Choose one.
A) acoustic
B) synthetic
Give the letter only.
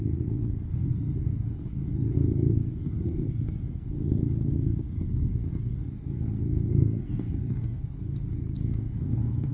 B